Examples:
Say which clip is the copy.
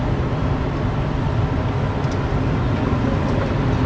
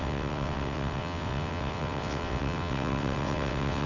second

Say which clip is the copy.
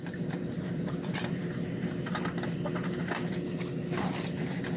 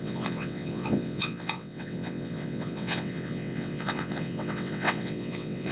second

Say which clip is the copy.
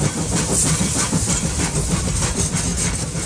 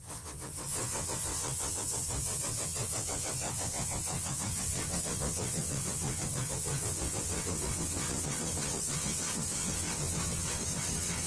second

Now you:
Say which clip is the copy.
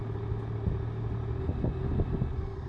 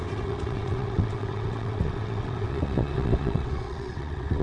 second